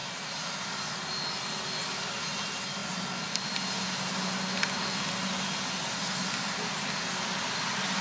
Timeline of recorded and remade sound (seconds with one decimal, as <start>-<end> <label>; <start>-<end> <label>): 0.0-8.0 recorded